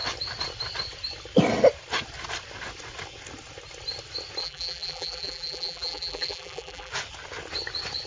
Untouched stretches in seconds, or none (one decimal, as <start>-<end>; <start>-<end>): 0.0-4.4; 6.9-8.1